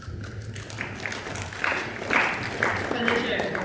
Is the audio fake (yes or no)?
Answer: no